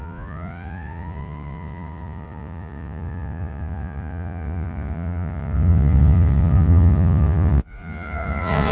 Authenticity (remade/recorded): remade